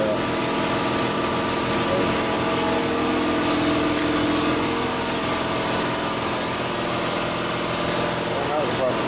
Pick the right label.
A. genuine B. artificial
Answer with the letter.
A